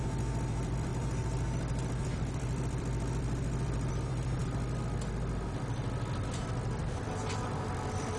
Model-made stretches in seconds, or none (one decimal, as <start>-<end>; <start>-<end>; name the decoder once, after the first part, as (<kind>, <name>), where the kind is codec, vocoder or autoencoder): 0.0-4.4 (vocoder, BigVGAN v2); 7.0-8.2